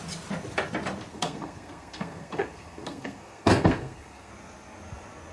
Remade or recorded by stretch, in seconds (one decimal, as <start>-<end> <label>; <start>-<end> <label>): 0.0-1.1 recorded; 1.1-4.3 remade; 4.3-5.3 recorded